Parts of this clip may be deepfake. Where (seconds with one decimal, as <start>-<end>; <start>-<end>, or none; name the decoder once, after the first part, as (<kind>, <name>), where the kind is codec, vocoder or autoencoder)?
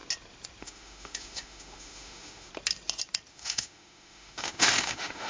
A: 0.6-2.5 (autoencoder, DAC-VAE); 3.3-5.3